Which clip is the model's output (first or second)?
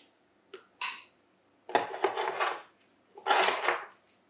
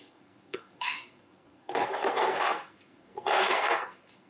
second